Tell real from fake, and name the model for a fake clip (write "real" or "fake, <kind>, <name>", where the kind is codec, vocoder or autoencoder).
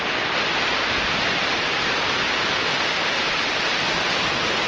real